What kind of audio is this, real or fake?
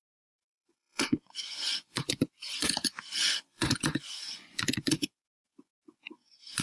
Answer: fake